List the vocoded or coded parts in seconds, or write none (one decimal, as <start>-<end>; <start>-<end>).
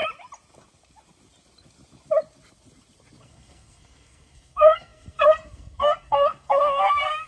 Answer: 3.2-7.3